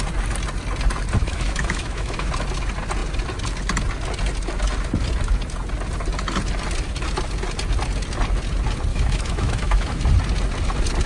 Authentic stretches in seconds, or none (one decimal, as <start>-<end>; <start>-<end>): 0.0-1.2; 2.3-8.9; 10.0-11.1